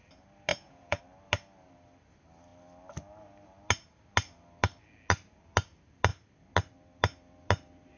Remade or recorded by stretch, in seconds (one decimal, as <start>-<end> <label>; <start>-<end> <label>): 0.0-0.5 recorded; 0.5-1.0 remade; 1.0-8.0 recorded